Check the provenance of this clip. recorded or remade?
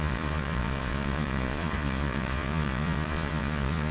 remade